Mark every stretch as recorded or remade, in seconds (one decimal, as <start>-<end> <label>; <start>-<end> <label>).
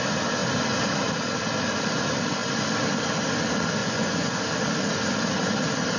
0.0-3.8 recorded; 3.8-4.4 remade; 4.4-6.0 recorded